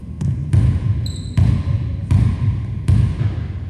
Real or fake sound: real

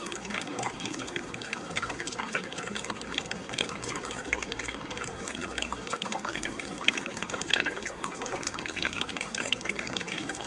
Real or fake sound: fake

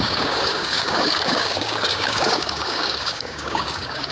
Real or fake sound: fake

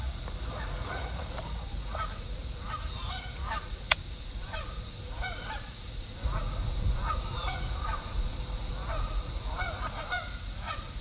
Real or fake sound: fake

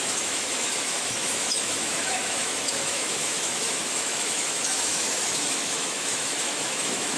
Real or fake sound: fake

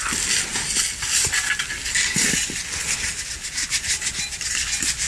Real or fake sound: real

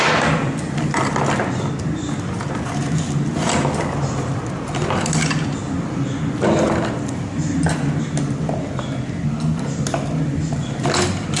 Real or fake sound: real